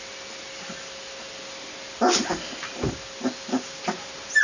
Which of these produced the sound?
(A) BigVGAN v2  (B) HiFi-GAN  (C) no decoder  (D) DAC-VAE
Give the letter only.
C